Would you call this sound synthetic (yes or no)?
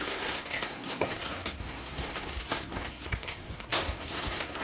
yes